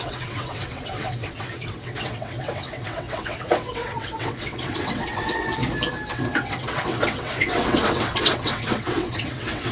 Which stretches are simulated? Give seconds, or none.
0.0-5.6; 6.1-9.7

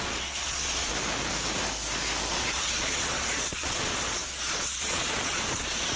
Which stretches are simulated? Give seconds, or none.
0.0-0.9; 2.3-6.0

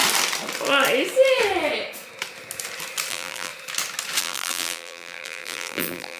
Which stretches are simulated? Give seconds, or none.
3.1-3.5; 4.2-6.2